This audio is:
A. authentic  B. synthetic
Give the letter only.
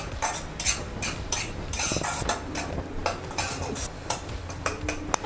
A